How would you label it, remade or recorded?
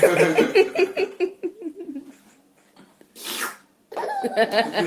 recorded